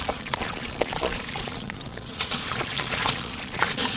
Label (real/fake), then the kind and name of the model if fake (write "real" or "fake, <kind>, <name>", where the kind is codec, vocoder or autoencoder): fake, vocoder, Vocos